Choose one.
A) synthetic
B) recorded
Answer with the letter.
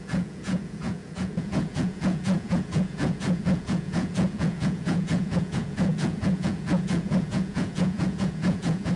A